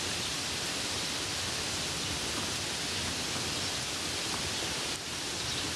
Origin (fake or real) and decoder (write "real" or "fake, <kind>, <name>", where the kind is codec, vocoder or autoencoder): real